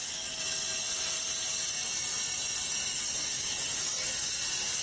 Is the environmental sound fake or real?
real